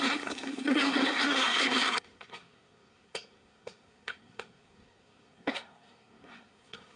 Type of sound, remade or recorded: remade